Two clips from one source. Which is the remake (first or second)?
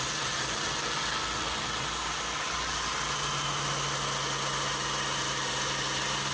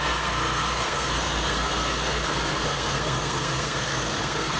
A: second